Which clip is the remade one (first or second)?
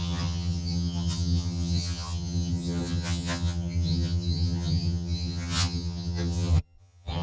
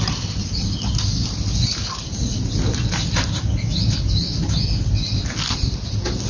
first